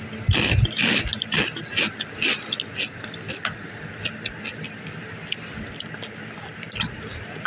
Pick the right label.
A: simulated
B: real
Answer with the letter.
B